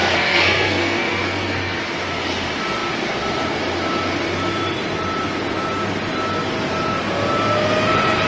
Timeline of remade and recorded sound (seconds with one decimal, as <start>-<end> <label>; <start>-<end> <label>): 0.0-1.8 remade; 1.8-8.3 recorded